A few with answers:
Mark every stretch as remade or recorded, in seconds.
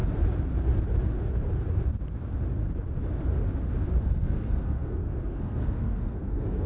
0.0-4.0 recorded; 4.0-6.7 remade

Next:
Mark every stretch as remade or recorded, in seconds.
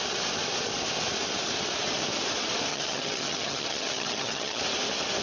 0.0-2.7 recorded; 2.7-4.6 remade; 4.6-5.2 recorded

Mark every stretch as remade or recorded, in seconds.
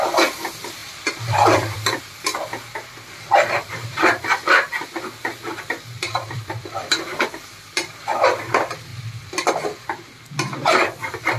0.0-0.8 recorded; 0.8-2.0 remade; 2.0-3.3 recorded; 3.3-7.5 remade; 7.5-8.9 recorded; 8.9-11.4 remade